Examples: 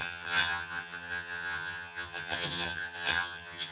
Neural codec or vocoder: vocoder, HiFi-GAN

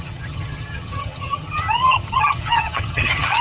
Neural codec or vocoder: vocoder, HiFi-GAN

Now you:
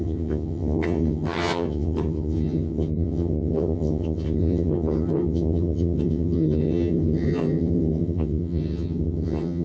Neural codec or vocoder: vocoder, HiFi-GAN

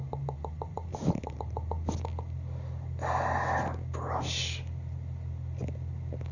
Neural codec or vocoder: none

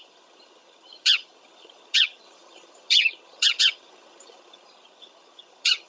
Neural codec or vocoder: vocoder, HiFi-GAN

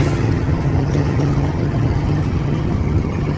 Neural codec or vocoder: vocoder, HiFi-GAN